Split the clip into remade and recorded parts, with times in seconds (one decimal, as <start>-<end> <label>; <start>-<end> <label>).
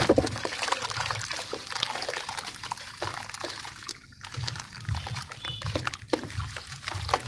0.0-3.9 recorded; 3.9-4.9 remade; 4.9-7.3 recorded